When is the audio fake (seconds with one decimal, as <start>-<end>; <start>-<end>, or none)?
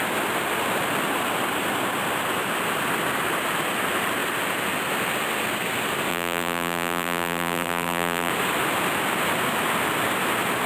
6.1-8.3